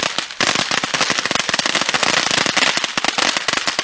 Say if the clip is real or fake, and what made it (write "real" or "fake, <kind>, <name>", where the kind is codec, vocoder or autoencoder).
real